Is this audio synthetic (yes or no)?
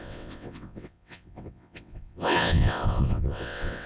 yes